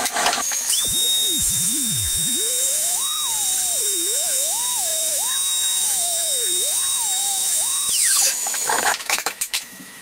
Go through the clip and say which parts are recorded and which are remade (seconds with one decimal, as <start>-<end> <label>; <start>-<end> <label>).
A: 0.0-3.3 remade; 3.3-3.8 recorded; 3.8-10.0 remade